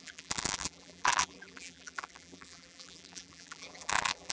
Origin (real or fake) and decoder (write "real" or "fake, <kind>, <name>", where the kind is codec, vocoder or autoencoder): fake, vocoder, BigVGAN v2